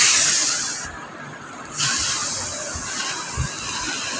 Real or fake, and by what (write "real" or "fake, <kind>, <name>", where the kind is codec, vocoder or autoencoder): real